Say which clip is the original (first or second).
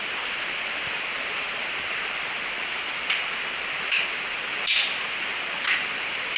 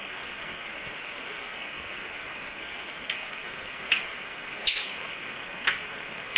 first